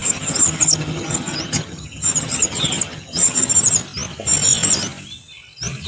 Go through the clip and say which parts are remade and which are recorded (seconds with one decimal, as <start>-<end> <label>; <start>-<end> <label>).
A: 0.0-3.5 remade; 3.5-5.9 recorded